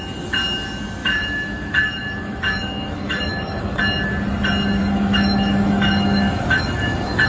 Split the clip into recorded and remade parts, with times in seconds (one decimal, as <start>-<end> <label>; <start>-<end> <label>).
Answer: 0.0-1.0 recorded; 1.0-3.8 remade; 3.8-4.8 recorded; 4.8-7.3 remade